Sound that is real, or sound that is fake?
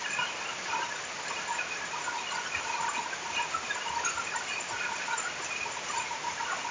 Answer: real